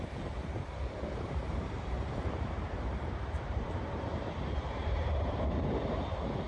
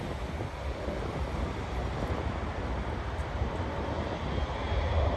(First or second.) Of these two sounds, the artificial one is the first